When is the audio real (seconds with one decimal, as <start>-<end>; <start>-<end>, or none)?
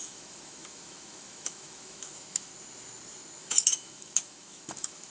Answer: 2.5-3.4